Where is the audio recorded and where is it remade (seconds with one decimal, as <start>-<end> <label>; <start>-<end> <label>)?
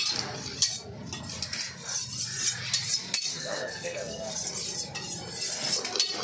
0.0-3.3 recorded; 3.3-4.3 remade; 4.3-6.2 recorded